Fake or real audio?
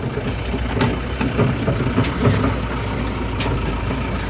real